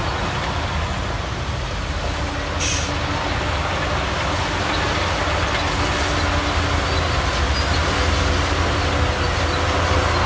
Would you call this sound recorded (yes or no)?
yes